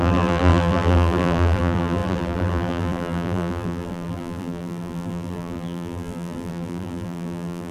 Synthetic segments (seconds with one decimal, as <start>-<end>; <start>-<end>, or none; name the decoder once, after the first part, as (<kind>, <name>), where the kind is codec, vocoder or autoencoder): 0.0-7.7 (vocoder, BigVGAN v2)